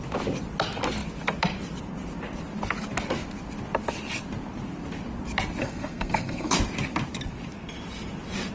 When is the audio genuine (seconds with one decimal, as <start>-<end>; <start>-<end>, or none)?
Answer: 0.0-5.6; 6.5-8.5